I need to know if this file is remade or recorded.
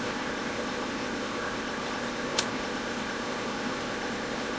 remade